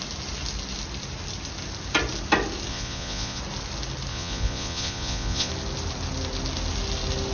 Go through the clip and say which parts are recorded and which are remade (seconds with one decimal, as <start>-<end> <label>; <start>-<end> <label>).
0.0-2.7 recorded; 2.7-3.4 remade; 3.4-4.1 recorded; 4.1-5.5 remade; 5.5-7.3 recorded